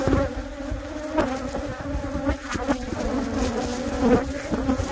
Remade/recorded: recorded